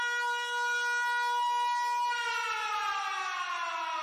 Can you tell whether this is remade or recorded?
recorded